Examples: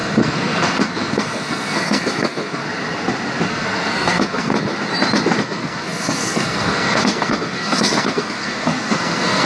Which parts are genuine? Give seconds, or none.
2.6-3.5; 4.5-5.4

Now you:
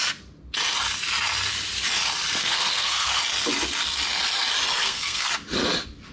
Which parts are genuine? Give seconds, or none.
0.0-2.4; 3.2-4.8; 5.3-6.1

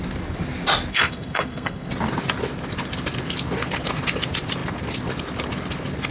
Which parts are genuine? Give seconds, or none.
0.0-0.9; 1.9-6.1

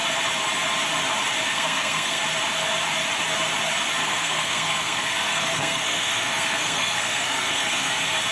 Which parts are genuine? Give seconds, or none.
0.0-1.5; 2.2-4.0; 7.9-8.3

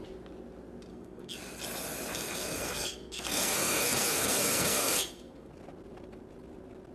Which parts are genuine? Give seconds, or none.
0.0-0.9; 1.4-2.1; 5.5-6.9